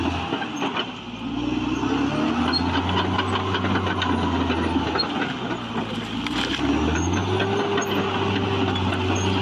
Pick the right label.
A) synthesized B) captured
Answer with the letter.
B